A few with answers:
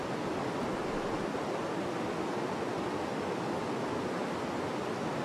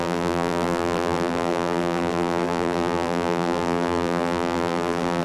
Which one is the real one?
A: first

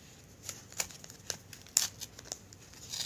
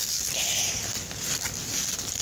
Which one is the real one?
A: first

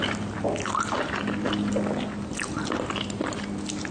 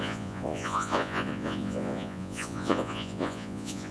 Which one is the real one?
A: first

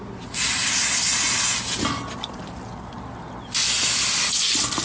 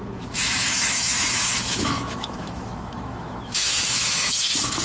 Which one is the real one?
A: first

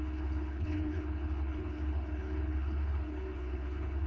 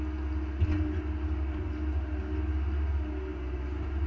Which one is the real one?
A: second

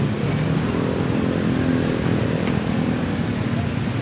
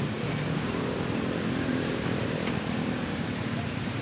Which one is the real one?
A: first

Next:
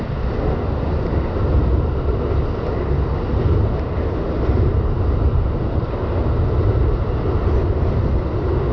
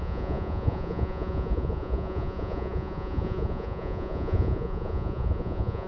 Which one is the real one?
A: first